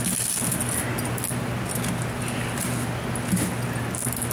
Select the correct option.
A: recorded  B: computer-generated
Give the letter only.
A